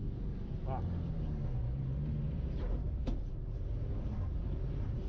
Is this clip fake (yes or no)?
no